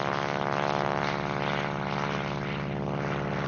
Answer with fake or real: real